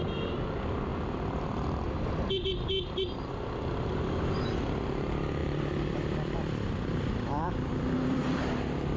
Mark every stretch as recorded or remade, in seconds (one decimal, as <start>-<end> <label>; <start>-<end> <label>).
0.0-0.9 recorded; 0.9-2.3 remade; 2.3-5.4 recorded; 5.4-8.4 remade; 8.4-9.0 recorded